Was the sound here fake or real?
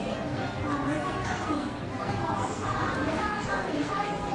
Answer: fake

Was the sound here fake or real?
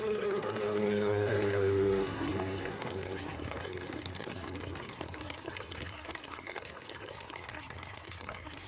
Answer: fake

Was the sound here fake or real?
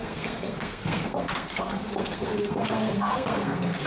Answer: fake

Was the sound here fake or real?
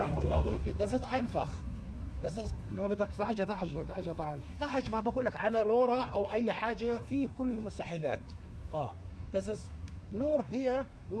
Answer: fake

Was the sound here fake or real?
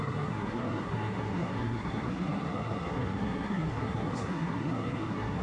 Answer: fake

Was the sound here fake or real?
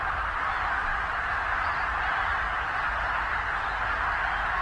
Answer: real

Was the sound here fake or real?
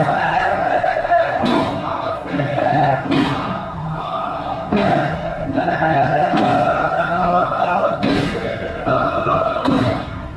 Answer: fake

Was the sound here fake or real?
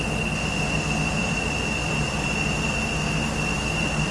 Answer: real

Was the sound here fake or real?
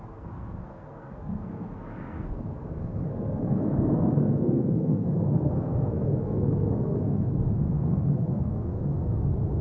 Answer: fake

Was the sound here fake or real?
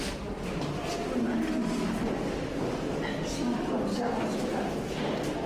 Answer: real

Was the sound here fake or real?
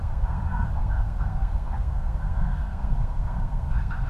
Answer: fake